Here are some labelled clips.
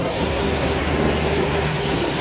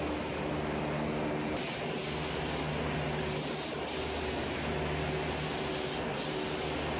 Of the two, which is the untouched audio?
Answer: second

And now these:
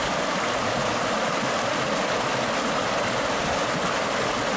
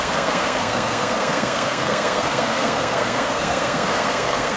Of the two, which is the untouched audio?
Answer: first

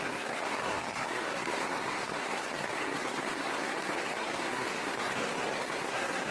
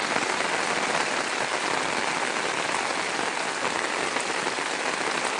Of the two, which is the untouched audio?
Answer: second